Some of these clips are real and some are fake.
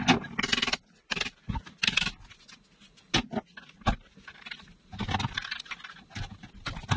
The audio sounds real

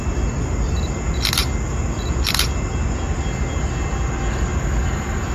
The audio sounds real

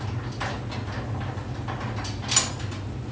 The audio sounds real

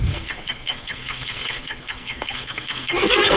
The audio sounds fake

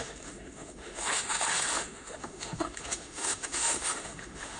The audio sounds fake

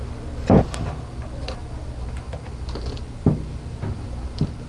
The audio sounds real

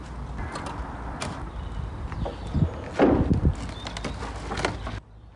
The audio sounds real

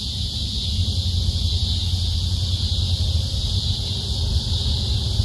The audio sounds real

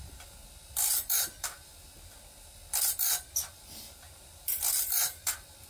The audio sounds fake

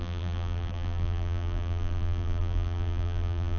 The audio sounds fake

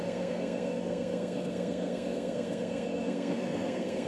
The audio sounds fake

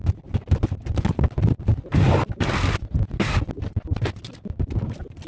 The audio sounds real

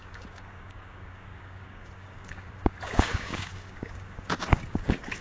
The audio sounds fake